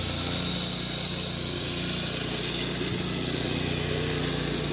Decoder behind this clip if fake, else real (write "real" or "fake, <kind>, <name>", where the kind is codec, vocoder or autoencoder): real